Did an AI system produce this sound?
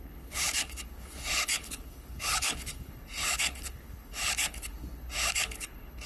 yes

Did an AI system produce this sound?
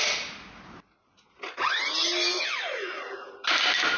no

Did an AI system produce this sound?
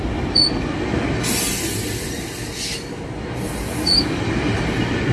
no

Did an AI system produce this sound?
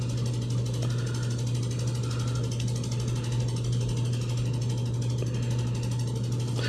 no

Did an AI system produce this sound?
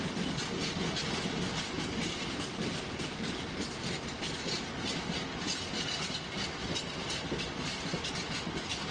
no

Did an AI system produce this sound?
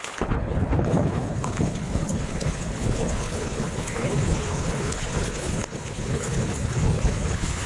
yes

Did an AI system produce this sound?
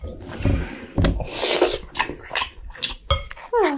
no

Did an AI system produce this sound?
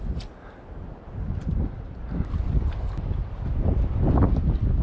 no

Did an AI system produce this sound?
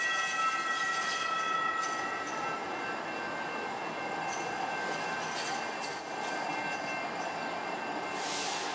no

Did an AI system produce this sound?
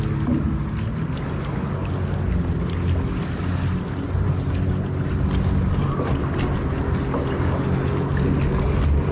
no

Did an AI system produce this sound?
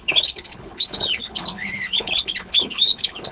yes